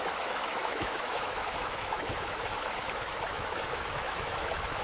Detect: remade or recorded remade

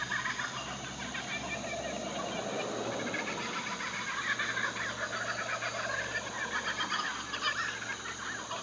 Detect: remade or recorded recorded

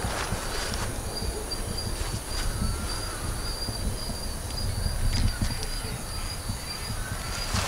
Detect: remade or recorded recorded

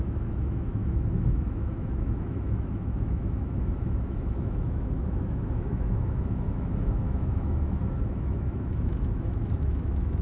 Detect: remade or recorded remade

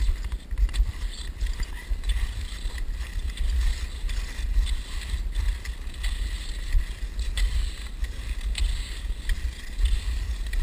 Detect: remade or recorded recorded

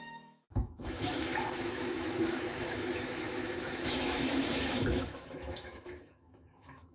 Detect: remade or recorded remade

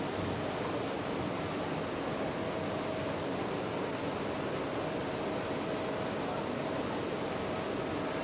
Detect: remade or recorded recorded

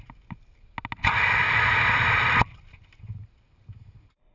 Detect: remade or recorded recorded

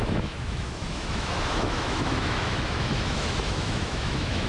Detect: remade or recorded remade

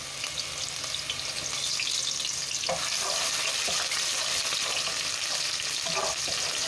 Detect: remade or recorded recorded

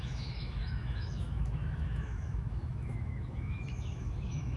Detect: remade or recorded remade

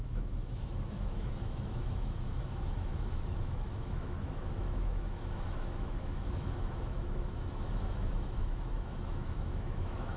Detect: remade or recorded remade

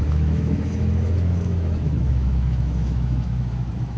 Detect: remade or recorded remade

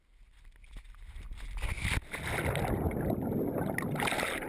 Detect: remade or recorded recorded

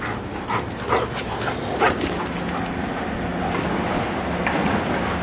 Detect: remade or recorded recorded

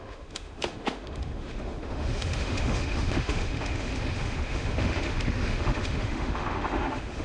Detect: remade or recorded remade